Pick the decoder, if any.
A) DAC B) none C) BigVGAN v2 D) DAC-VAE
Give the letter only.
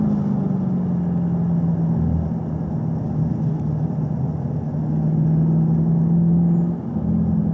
B